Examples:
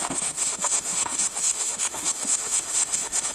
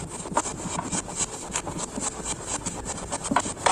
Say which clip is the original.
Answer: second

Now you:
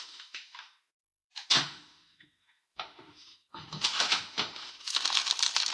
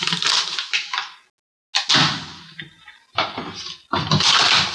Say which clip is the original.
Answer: second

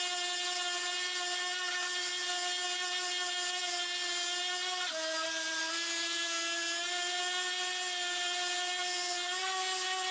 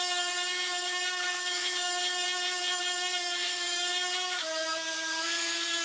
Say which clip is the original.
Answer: first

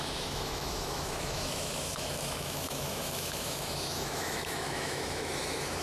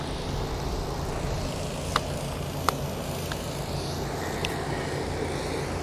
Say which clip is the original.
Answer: second